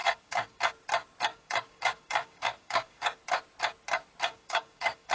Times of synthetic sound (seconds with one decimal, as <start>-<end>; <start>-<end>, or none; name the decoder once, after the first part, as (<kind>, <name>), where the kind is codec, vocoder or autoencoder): 0.0-0.6 (codec, DAC); 1.3-3.2; 4.3-5.1